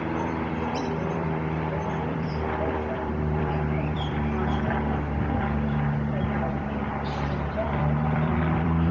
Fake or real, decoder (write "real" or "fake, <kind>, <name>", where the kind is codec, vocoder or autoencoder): fake, vocoder, BigVGAN v2